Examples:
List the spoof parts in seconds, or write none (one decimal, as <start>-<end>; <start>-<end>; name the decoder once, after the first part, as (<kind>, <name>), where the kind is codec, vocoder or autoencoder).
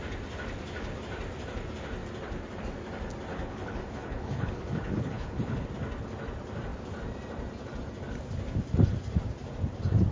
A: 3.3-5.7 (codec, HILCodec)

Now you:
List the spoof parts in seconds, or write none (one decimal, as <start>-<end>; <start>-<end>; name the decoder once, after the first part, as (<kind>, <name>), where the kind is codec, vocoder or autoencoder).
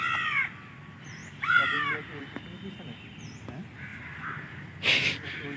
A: 1.2-2.2 (vocoder, BigVGAN v2); 3.9-4.6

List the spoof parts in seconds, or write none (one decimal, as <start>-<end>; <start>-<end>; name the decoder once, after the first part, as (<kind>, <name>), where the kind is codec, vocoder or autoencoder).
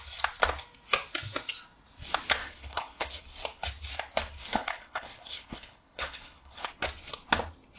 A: 2.4-3.2 (codec, HILCodec); 4.4-6.7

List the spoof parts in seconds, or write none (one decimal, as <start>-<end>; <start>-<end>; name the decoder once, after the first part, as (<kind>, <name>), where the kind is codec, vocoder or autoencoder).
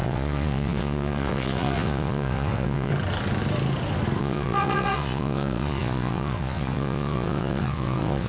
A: 0.0-2.9 (vocoder, WaveNeXt); 4.2-8.3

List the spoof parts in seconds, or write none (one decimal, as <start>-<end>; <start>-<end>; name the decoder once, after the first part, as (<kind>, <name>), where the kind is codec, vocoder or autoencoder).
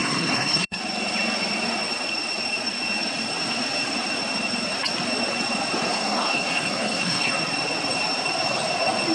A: 0.0-0.8 (codec, SNAC); 5.9-7.3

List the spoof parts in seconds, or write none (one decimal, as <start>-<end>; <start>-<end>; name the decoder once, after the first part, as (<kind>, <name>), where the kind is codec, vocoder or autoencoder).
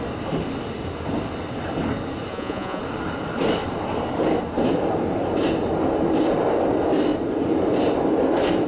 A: 2.3-2.8 (vocoder, Vocos)